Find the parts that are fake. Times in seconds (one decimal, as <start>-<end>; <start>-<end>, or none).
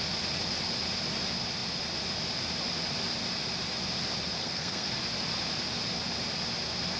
4.4-4.9